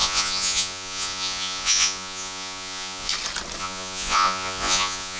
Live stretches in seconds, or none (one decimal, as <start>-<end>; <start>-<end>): 3.1-3.6